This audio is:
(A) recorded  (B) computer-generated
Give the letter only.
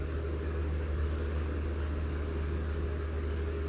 B